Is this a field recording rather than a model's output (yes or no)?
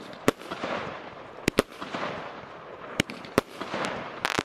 no